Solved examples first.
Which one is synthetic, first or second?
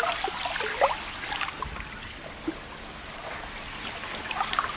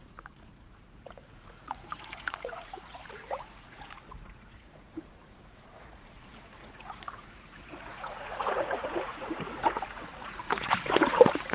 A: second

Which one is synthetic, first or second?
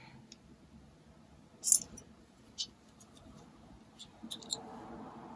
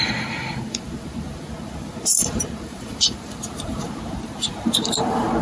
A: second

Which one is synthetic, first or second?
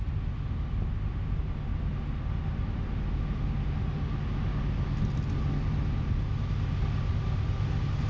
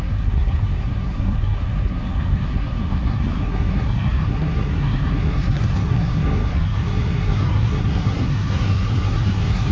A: second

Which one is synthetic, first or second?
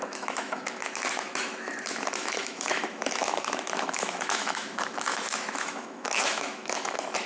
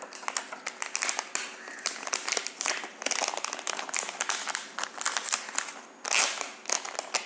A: first